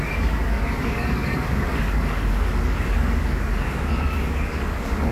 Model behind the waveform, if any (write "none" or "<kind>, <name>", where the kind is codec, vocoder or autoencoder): codec, DAC